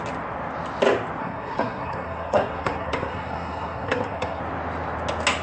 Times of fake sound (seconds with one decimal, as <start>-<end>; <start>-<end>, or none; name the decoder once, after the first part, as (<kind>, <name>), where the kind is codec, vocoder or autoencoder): 1.2-4.4 (codec, SNAC)